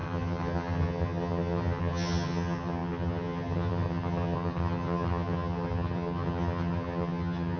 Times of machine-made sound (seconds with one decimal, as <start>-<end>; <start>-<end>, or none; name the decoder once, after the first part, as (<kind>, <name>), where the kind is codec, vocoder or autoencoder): 0.0-7.6 (vocoder, HiFi-GAN)